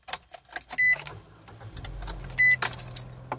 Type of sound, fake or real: real